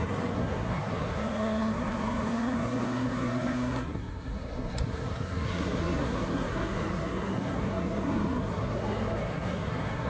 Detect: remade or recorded remade